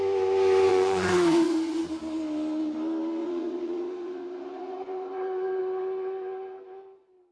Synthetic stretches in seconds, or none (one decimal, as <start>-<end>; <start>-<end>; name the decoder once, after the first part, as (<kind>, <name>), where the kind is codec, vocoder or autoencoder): 0.7-1.8 (vocoder, Vocos); 3.2-5.6